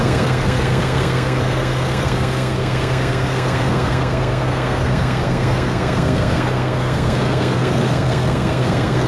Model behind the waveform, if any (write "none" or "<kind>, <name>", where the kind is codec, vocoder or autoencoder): codec, SNAC